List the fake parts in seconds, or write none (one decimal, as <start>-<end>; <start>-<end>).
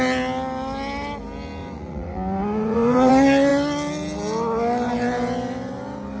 1.6-3.1